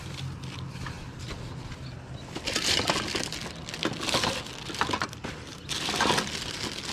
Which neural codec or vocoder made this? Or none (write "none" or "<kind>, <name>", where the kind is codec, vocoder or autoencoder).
none